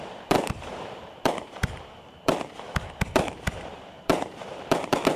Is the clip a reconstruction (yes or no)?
yes